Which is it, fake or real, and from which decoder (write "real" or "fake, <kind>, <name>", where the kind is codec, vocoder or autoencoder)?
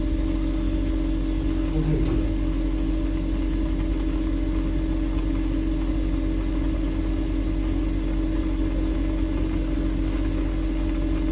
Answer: real